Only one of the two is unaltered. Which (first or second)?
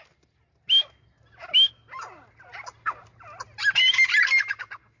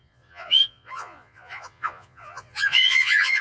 first